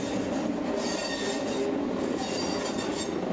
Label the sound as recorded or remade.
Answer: recorded